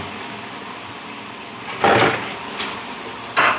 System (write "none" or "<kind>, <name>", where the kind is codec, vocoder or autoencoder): none